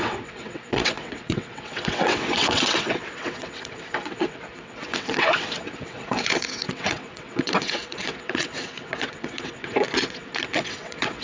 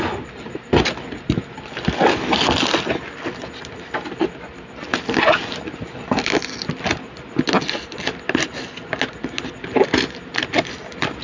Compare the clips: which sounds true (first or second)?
second